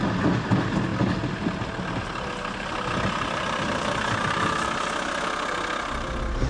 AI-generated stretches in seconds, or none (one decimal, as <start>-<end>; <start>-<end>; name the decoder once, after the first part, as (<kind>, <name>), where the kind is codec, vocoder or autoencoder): none